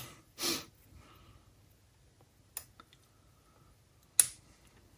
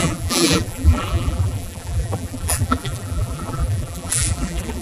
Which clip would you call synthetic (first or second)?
second